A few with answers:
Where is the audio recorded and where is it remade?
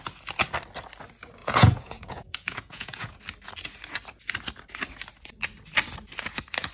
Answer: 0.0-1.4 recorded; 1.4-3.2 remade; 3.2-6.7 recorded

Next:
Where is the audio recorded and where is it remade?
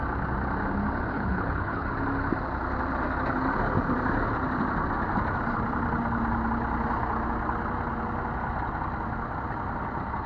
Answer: 0.0-1.1 recorded; 1.1-1.9 remade; 1.9-10.3 recorded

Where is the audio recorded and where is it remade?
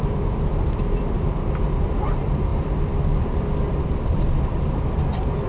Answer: 0.0-5.5 recorded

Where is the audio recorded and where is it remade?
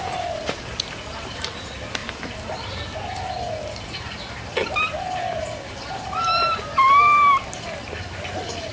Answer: 0.0-8.7 recorded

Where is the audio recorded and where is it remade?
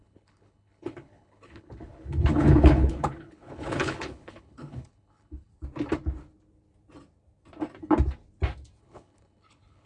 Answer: 0.0-5.5 remade; 5.5-8.8 recorded; 8.8-9.9 remade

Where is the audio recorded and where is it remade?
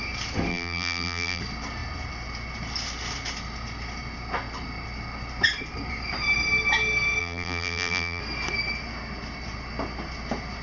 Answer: 0.0-0.5 recorded; 0.5-1.4 remade; 1.4-7.2 recorded; 7.2-8.2 remade; 8.2-10.6 recorded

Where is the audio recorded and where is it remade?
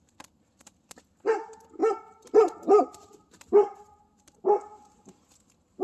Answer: 0.0-5.8 recorded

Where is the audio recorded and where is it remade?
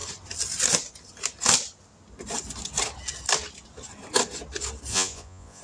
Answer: 0.0-4.9 recorded; 4.9-5.6 remade